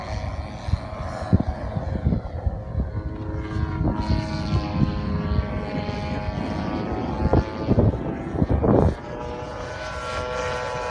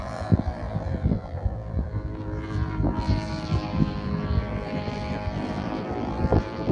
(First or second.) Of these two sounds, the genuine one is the first